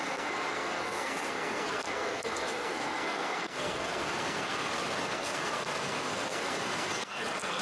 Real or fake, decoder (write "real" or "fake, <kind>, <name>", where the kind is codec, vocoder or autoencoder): fake, codec, SNAC